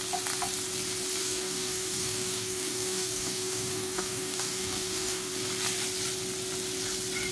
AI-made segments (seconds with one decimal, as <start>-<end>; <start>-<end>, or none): 1.2-5.3